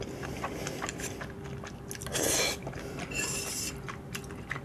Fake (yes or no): no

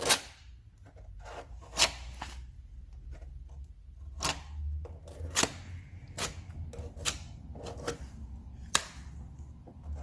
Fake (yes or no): no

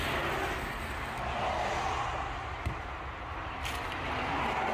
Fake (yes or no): no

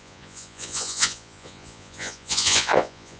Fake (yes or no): yes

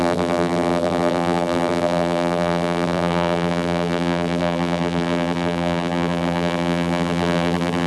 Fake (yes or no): yes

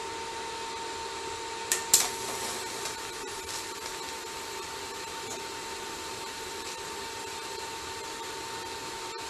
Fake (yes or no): no